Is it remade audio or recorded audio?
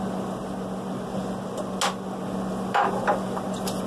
recorded